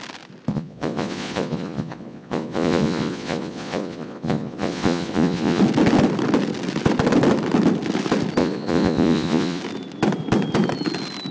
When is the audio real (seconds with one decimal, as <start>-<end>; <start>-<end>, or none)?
0.0-0.5; 5.6-8.4; 9.6-11.3